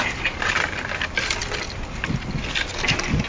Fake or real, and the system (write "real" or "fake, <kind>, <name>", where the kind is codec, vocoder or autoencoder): real